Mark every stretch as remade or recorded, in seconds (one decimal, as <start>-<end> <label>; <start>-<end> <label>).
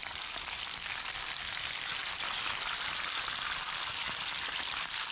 0.0-5.1 recorded